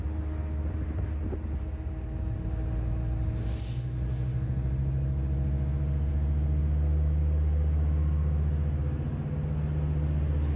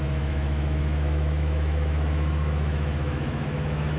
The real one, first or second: first